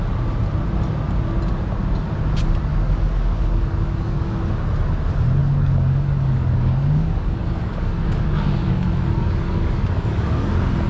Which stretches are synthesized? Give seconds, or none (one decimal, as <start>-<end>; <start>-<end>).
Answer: 2.7-4.4; 5.4-10.5